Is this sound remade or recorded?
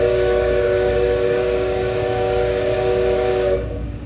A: remade